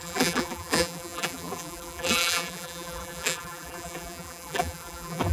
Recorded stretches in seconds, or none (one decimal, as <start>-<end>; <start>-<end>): none

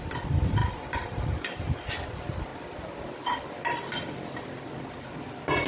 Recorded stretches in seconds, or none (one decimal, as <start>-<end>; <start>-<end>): 0.0-0.6; 1.9-5.7

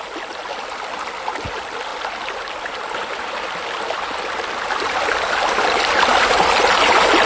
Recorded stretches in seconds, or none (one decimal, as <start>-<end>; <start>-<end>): 0.0-6.2; 6.8-7.3

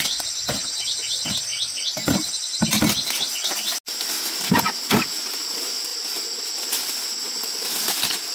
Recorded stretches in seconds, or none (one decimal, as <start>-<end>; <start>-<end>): 0.0-8.3

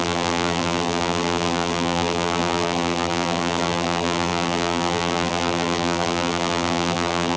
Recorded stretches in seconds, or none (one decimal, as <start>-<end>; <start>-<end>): none

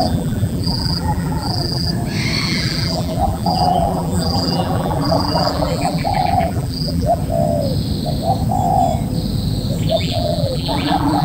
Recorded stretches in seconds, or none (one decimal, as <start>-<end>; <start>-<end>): 1.9-2.4; 7.2-9.9

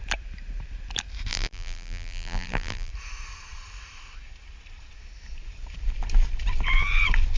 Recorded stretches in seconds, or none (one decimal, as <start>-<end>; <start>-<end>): 0.0-1.3; 2.9-7.4

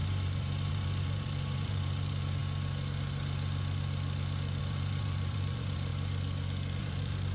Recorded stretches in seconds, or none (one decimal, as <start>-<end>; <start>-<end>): 2.4-4.6; 5.9-6.8